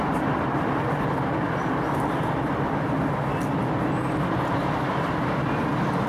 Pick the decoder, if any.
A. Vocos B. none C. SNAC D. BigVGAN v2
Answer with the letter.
B